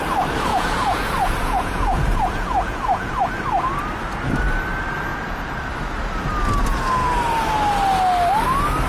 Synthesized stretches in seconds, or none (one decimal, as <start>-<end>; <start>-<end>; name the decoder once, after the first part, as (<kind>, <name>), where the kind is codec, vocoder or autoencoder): 0.5-3.2 (vocoder, Vocos); 5.1-5.7